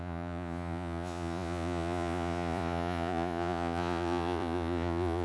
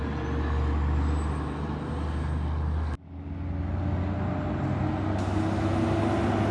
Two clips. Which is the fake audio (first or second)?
first